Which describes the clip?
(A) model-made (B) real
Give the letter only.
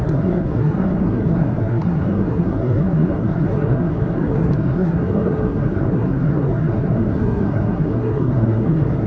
A